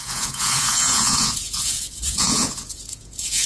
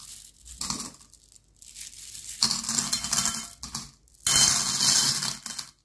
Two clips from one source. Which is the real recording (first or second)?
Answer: second